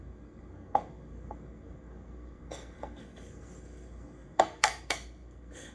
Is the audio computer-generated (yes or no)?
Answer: yes